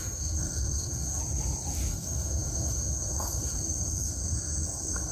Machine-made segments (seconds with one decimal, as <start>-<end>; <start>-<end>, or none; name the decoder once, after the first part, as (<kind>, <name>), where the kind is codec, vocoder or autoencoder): 0.0-1.2 (codec, SNAC); 1.9-5.1

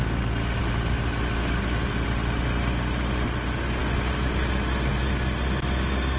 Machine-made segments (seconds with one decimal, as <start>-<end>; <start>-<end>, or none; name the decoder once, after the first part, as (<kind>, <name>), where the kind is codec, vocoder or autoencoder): none

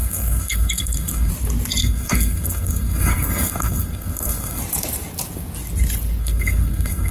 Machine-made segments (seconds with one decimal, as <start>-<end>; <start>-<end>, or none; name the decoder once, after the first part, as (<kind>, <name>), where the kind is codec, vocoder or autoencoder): 0.0-1.3 (codec, SNAC); 1.8-4.6; 6.2-7.1

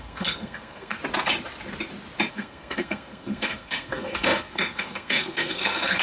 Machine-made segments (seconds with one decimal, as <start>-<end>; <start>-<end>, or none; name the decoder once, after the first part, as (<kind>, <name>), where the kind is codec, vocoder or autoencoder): 0.0-1.0 (codec, SNAC); 2.3-6.0

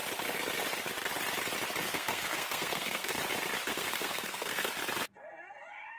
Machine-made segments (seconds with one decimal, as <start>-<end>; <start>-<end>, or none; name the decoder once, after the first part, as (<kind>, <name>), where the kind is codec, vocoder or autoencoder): 1.8-3.2 (codec, SNAC); 3.7-4.7

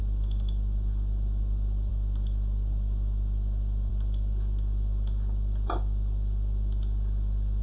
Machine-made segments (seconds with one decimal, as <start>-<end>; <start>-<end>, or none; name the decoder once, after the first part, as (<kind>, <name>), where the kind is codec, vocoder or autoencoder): none